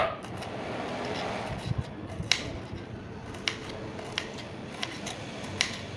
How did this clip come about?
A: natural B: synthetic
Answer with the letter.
A